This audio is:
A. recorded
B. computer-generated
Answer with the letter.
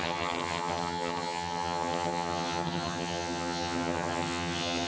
B